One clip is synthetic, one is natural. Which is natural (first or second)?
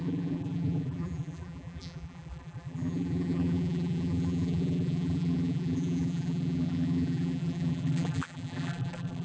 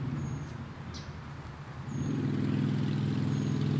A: second